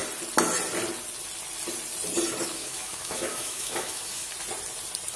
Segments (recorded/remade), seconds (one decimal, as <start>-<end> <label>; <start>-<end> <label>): 0.0-2.6 recorded; 2.6-4.3 remade; 4.3-5.2 recorded

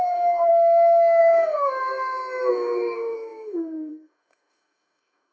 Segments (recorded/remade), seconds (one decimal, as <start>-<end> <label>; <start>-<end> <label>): 0.0-0.5 remade; 0.5-1.2 recorded; 1.2-1.8 remade; 1.8-2.5 recorded; 2.5-5.3 remade

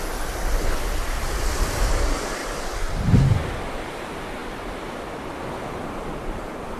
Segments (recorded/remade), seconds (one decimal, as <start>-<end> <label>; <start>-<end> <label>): 0.0-6.8 recorded